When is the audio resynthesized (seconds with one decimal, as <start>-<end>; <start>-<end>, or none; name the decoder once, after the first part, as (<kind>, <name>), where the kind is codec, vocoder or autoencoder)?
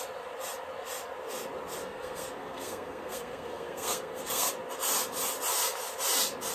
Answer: 1.8-4.5 (codec, SNAC)